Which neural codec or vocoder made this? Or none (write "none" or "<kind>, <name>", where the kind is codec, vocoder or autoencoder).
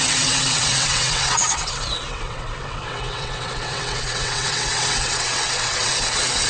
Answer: vocoder, WaveNeXt